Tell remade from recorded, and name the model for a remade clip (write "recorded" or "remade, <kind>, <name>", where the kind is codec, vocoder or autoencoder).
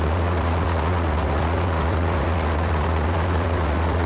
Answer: remade, vocoder, Vocos